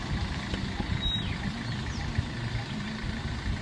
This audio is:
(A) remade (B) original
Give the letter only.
B